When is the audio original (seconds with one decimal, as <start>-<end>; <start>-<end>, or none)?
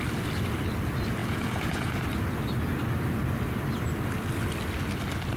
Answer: 0.0-1.2; 2.0-5.4